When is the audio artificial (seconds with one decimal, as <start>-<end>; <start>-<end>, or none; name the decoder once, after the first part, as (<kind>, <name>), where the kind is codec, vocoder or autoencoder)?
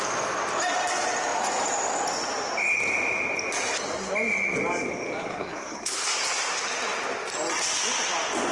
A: 5.3-6.2 (codec, SNAC)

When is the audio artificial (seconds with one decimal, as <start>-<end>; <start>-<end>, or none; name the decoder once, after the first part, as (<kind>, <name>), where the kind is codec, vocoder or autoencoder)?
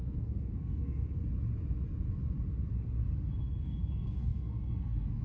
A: 0.0-1.2 (codec, SNAC); 3.5-5.2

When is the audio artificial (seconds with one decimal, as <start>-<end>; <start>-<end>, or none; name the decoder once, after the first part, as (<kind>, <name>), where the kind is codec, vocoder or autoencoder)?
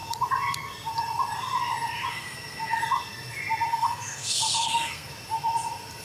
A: 2.1-2.8 (codec, SNAC); 3.7-5.1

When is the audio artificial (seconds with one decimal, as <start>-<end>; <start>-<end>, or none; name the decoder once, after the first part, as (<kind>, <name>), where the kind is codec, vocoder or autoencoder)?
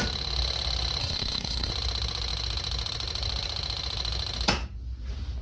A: 1.0-1.7 (codec, SNAC)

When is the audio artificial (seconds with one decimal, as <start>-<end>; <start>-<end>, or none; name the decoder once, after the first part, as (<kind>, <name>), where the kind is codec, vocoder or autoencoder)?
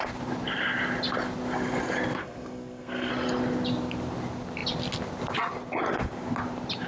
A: 2.2-3.1 (codec, SNAC)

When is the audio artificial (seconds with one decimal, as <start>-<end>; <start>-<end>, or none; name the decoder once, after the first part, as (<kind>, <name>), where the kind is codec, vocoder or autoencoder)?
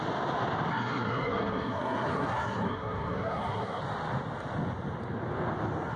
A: 0.7-3.8 (codec, SNAC)